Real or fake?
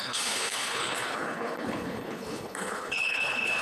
fake